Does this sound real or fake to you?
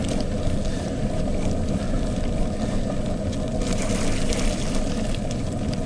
real